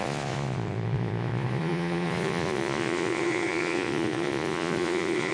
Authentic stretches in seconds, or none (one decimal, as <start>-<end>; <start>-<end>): none